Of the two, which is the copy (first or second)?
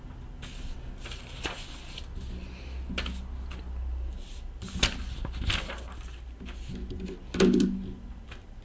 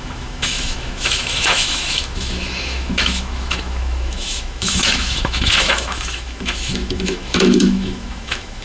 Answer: second